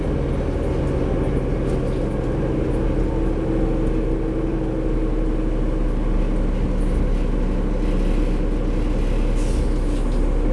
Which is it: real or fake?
real